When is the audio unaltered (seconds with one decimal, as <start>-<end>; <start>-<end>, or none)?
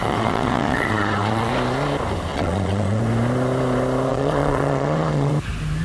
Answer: 1.5-2.3; 3.0-4.1; 5.3-5.8